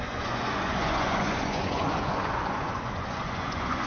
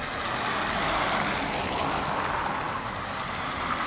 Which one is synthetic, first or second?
first